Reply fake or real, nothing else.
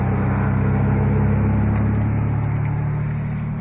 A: real